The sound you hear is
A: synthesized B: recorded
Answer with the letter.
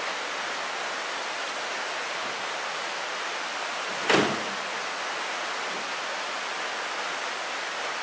B